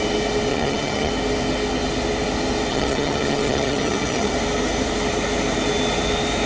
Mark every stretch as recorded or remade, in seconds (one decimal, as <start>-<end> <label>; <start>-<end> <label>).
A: 0.0-0.5 recorded; 0.5-1.1 remade; 1.1-2.7 recorded; 2.7-4.3 remade; 4.3-6.5 recorded